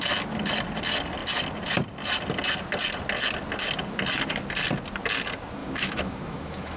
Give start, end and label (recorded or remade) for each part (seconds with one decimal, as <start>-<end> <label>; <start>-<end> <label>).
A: 0.0-5.6 recorded; 5.6-6.8 remade